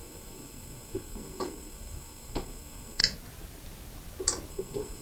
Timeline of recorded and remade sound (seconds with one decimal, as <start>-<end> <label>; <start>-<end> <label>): 0.0-3.0 remade; 3.0-4.5 recorded; 4.5-5.0 remade